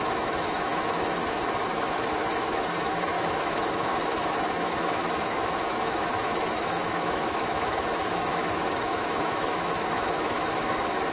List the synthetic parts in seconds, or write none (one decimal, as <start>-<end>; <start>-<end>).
0.0-11.1